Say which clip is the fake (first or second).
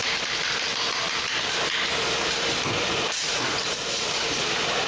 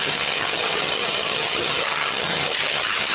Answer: second